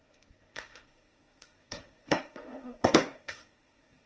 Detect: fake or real fake